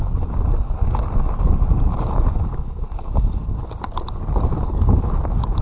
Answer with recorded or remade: recorded